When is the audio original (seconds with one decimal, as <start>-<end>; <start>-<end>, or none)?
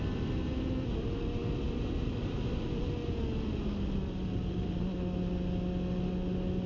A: 0.0-6.7